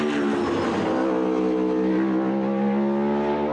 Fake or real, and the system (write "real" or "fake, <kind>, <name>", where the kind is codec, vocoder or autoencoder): real